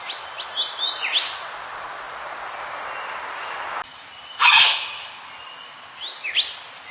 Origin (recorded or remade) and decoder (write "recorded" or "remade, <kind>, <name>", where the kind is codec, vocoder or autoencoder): recorded